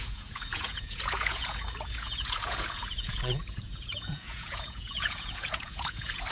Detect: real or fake fake